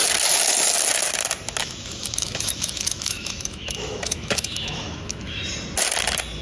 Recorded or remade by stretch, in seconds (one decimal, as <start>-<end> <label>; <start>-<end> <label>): 0.0-1.6 recorded; 1.6-5.4 remade; 5.4-6.4 recorded